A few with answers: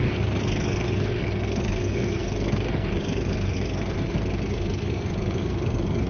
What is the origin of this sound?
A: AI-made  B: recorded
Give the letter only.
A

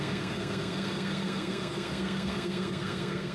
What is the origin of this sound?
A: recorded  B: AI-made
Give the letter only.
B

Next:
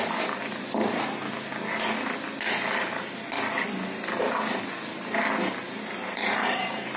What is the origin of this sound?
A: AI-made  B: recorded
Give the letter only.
A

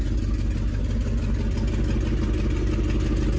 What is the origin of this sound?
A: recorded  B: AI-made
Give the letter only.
A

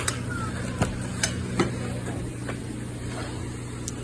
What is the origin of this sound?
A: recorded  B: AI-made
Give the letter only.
A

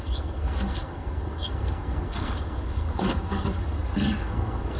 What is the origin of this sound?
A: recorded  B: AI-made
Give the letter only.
B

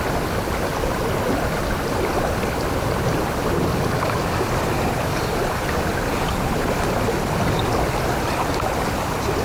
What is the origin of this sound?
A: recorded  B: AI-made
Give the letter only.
A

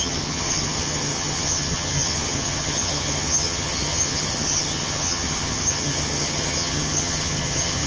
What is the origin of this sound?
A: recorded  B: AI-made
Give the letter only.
B